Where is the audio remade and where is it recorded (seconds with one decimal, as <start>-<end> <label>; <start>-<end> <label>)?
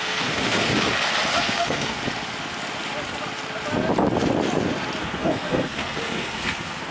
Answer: 0.0-0.7 remade; 0.7-1.4 recorded; 1.4-2.0 remade; 2.0-5.0 recorded; 5.0-6.9 remade